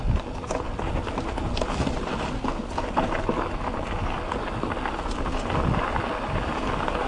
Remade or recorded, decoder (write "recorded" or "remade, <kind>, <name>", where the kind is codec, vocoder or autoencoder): recorded